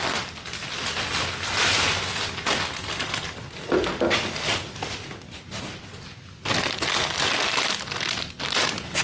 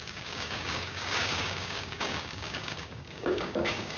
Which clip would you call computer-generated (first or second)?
second